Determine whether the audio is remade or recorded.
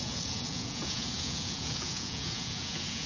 remade